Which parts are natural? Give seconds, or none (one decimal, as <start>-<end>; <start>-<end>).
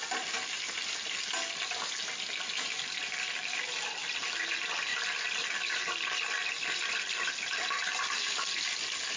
0.0-9.2